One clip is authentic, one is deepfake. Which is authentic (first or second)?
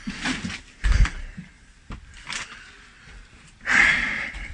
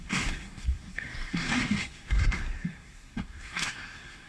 first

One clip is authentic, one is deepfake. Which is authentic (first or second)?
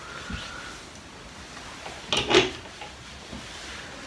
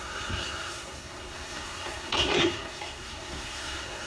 first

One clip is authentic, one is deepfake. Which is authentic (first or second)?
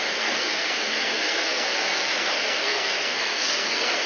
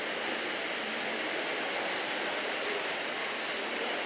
second